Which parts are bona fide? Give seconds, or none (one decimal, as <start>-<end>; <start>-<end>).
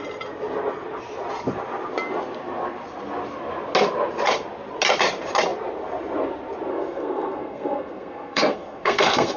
0.0-6.7